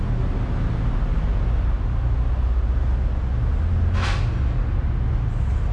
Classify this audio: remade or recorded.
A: recorded